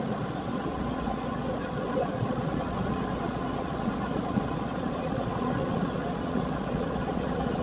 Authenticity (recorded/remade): remade